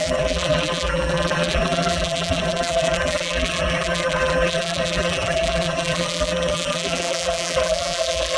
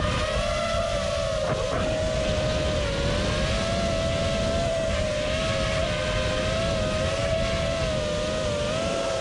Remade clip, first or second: first